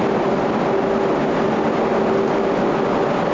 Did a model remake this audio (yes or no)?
no